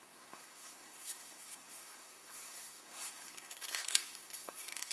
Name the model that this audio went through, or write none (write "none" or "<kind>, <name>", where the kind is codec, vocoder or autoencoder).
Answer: codec, SNAC